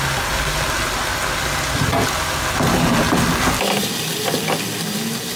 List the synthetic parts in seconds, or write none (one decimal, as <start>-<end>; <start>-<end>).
none